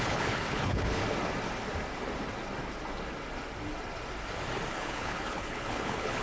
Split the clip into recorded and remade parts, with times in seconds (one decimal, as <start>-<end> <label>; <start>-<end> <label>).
0.0-1.0 remade; 1.0-4.7 recorded; 4.7-6.2 remade